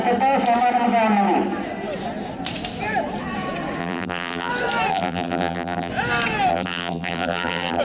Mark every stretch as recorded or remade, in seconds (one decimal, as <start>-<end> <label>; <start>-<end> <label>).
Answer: 0.0-3.8 recorded; 3.8-4.5 remade; 4.5-4.9 recorded; 4.9-5.9 remade; 5.9-6.5 recorded; 6.5-7.8 remade